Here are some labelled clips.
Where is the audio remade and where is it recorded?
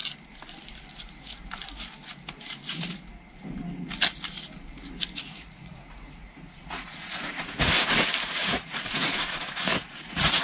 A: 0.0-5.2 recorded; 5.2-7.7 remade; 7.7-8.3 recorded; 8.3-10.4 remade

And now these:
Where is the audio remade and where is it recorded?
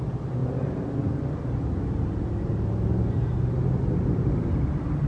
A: 0.0-5.1 recorded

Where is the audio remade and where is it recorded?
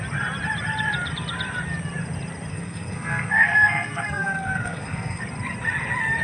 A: 0.0-2.5 recorded; 2.5-5.2 remade; 5.2-6.2 recorded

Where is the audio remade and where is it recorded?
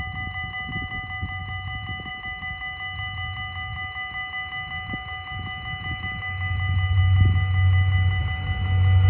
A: 0.0-9.1 recorded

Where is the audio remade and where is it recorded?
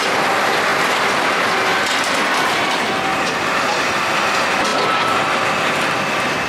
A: 0.0-6.5 recorded